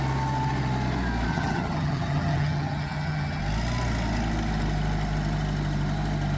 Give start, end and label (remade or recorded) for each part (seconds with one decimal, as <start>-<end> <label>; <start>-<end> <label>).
0.0-1.3 recorded; 1.3-3.4 remade; 3.4-6.4 recorded